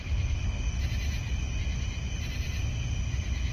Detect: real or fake real